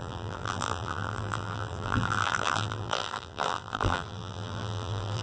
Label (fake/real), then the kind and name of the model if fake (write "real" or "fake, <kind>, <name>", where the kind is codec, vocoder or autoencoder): fake, vocoder, BigVGAN v2